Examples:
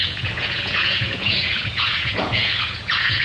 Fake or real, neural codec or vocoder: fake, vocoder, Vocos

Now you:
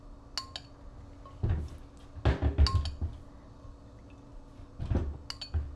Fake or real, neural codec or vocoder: real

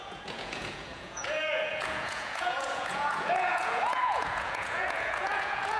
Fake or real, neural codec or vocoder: fake, vocoder, Vocos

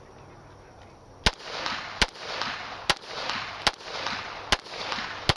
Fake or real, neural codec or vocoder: real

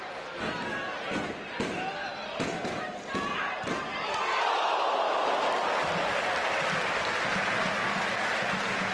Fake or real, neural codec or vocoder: real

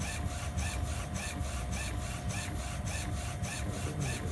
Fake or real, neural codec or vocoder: real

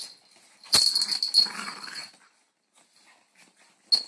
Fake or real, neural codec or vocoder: real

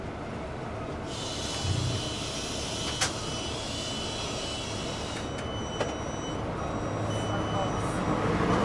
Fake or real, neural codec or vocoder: real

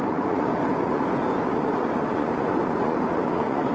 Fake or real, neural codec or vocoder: fake, vocoder, Vocos